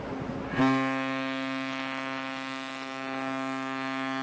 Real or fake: real